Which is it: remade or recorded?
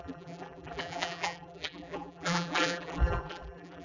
remade